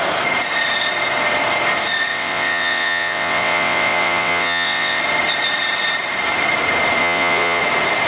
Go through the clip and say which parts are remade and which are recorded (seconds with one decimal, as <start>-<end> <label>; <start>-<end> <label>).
0.0-2.1 recorded; 2.1-5.0 remade; 5.0-7.0 recorded; 7.0-7.6 remade; 7.6-8.1 recorded

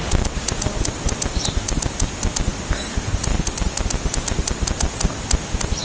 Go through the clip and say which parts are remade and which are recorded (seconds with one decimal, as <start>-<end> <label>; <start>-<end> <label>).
0.0-5.8 recorded

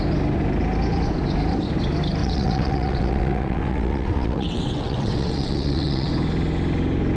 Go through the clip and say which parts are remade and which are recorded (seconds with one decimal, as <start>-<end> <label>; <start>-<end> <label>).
0.0-2.2 recorded; 2.2-6.1 remade; 6.1-7.2 recorded

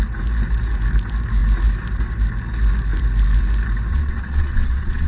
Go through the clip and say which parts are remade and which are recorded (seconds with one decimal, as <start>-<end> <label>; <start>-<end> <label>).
0.0-3.9 recorded; 3.9-5.1 remade

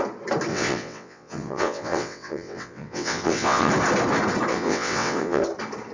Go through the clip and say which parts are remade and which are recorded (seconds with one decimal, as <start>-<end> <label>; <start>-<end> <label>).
0.0-0.5 recorded; 0.5-3.7 remade; 3.7-4.5 recorded; 4.5-5.4 remade; 5.4-5.9 recorded

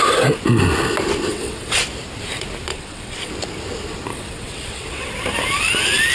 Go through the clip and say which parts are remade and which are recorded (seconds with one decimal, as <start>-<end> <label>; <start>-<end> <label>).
0.0-1.3 recorded; 1.3-1.8 remade; 1.8-2.7 recorded; 2.7-3.3 remade; 3.3-4.1 recorded; 4.1-5.1 remade; 5.1-6.1 recorded

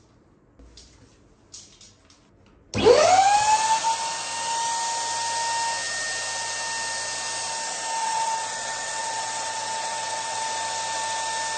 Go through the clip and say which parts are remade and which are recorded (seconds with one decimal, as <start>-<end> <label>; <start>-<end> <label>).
0.0-8.0 recorded; 8.0-10.5 remade; 10.5-11.6 recorded